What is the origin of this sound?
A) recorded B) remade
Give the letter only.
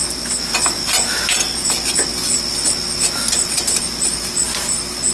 A